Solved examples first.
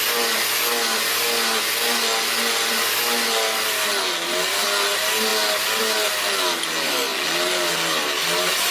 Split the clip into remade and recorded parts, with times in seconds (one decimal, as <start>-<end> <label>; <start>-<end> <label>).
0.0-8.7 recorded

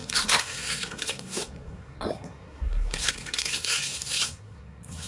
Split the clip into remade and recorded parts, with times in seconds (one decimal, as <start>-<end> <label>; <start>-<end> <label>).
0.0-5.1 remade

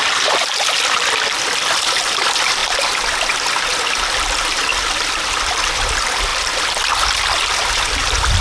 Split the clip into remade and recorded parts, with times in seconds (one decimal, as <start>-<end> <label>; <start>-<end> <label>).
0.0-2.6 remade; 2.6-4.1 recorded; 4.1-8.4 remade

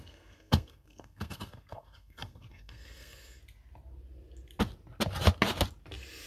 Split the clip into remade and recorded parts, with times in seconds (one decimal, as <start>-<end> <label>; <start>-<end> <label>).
0.0-3.4 remade; 3.4-6.3 recorded